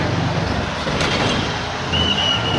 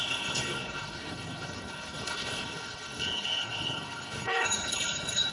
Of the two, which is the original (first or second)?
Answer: first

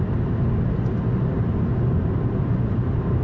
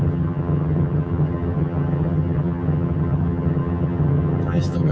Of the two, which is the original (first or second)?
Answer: first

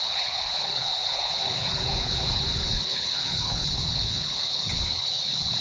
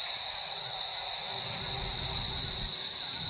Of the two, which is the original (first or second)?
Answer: second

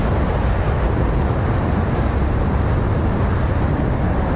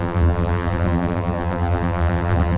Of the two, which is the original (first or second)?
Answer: first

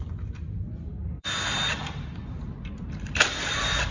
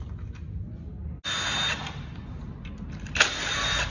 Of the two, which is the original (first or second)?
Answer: second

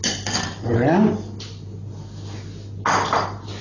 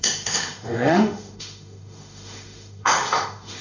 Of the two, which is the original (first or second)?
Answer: first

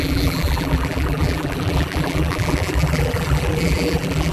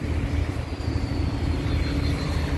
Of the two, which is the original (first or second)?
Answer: second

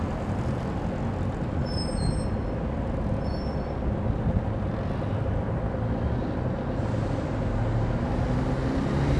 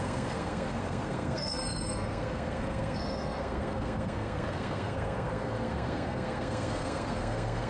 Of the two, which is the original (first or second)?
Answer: first